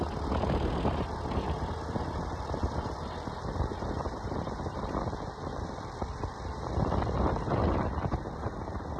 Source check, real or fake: fake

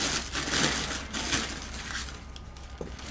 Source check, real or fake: real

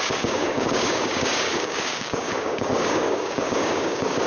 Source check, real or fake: fake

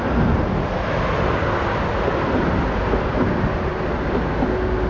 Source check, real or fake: real